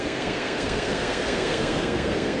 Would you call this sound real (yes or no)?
no